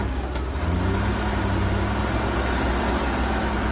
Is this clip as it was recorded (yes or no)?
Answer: yes